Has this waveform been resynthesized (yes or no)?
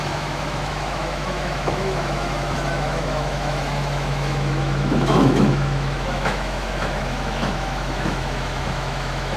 yes